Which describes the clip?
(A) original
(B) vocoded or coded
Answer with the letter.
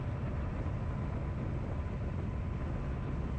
A